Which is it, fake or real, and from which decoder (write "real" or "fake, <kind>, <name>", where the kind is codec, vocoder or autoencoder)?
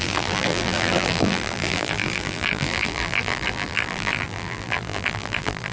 fake, vocoder, BigVGAN v2